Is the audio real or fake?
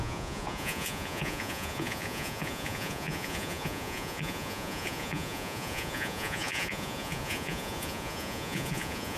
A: fake